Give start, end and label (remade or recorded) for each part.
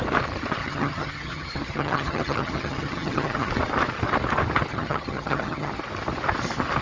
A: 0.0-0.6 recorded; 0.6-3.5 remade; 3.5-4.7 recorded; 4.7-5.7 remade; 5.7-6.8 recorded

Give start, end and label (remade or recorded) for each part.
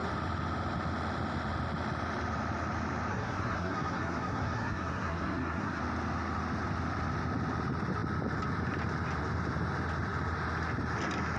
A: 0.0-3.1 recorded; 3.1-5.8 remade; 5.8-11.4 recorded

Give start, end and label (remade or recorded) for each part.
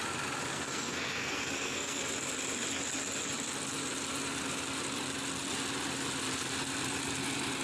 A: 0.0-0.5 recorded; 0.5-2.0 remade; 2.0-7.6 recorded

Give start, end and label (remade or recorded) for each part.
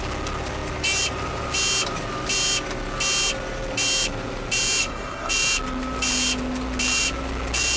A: 0.0-4.8 recorded; 4.8-5.3 remade; 5.3-7.8 recorded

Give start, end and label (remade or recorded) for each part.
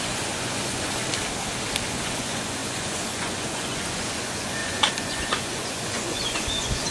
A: 0.0-1.0 remade; 1.0-1.9 recorded; 1.9-6.9 remade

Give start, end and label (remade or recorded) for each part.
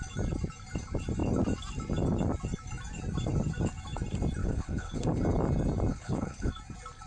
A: 0.0-4.4 recorded; 4.4-5.2 remade; 5.2-5.9 recorded; 5.9-6.5 remade; 6.5-7.1 recorded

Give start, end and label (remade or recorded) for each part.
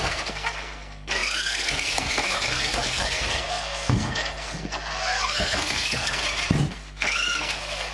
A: 0.0-6.2 remade; 6.2-6.7 recorded; 6.7-7.9 remade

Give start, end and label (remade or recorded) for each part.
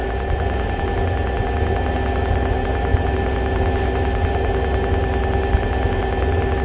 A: 0.0-6.6 recorded